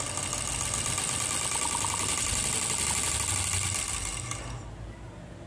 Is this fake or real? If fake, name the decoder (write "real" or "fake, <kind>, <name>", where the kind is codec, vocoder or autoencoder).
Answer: real